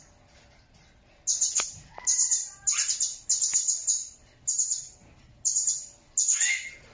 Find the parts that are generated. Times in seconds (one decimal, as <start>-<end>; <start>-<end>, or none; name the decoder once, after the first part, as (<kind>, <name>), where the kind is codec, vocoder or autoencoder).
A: none